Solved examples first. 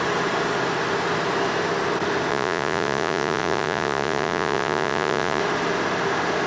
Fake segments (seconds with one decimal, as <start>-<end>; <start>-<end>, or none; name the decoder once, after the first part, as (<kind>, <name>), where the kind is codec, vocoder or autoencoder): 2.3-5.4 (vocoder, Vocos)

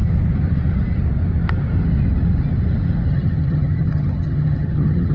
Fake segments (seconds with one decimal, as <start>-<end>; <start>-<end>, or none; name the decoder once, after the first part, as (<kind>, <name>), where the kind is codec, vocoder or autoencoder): 3.1-5.1 (vocoder, HiFi-GAN)

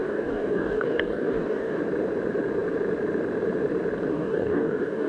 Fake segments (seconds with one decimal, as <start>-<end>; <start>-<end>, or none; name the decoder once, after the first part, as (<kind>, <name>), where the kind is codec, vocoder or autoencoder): 0.0-1.8 (codec, DAC); 4.1-5.1